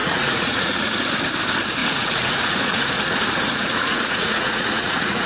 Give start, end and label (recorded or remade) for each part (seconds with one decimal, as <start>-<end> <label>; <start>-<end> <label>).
0.0-0.9 remade; 0.9-1.8 recorded; 1.8-5.3 remade